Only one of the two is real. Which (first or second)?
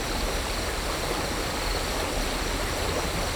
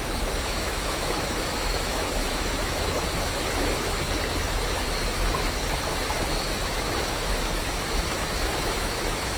first